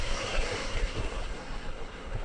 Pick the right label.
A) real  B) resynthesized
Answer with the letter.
B